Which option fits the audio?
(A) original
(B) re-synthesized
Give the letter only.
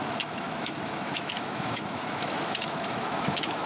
B